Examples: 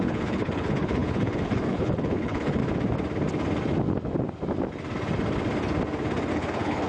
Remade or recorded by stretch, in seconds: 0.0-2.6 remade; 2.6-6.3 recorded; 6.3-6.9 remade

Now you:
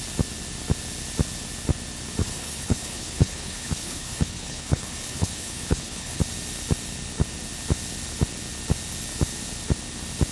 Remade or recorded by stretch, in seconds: 0.0-2.2 recorded; 2.2-6.2 remade; 6.2-10.3 recorded

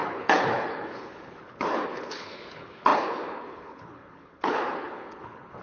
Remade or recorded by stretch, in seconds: 0.0-5.6 remade

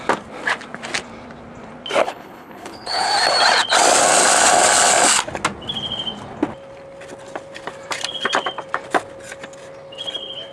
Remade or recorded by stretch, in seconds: 0.0-2.0 recorded; 2.0-3.1 remade; 3.1-10.5 recorded